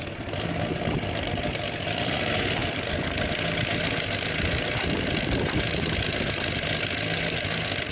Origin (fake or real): real